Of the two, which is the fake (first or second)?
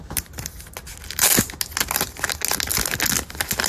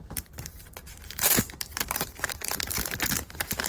second